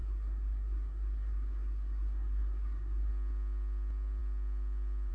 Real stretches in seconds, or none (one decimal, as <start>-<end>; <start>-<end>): 3.1-5.1